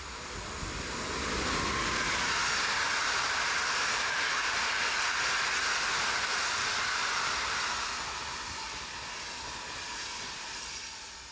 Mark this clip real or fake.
real